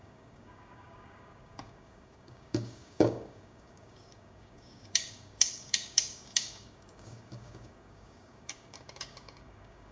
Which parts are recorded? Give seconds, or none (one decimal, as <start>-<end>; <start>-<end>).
none